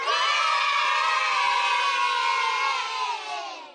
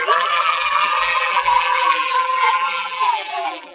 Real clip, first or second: first